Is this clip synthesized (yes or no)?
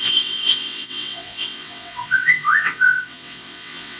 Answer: yes